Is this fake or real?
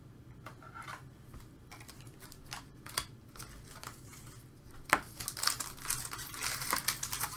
real